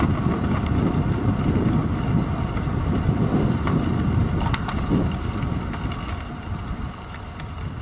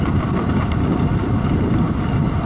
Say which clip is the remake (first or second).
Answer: second